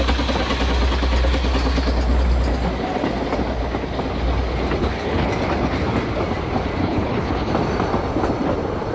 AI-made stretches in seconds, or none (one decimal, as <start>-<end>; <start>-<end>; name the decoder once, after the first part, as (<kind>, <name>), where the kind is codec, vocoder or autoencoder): 4.8-5.3 (codec, HILCodec); 6.8-7.5